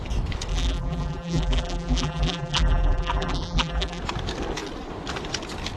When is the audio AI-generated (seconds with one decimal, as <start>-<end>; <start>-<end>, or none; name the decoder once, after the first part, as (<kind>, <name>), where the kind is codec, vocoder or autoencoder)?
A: 0.5-4.0 (vocoder, BigVGAN v2)